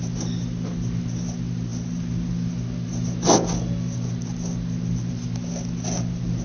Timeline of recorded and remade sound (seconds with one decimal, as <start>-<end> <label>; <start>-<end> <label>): 0.0-6.4 recorded